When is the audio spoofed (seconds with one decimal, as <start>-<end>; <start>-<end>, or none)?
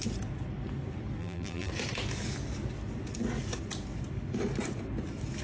1.2-1.7